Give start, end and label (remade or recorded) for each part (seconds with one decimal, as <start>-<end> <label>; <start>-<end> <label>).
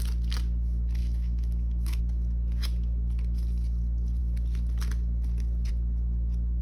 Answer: 0.0-1.0 recorded; 1.0-2.0 remade; 2.0-6.6 recorded